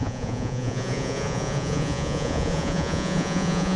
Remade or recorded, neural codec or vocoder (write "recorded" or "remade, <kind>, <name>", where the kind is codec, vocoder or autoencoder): remade, vocoder, Vocos